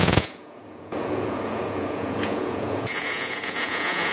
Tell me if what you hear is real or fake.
fake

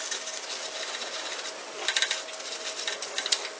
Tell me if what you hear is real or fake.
real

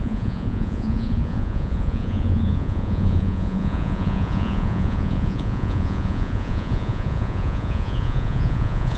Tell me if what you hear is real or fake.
fake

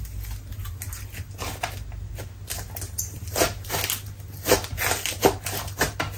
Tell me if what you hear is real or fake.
real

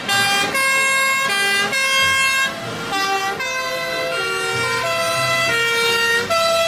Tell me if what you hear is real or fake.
real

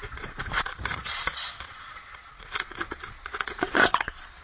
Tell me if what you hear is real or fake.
fake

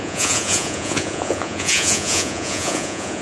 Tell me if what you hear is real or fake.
fake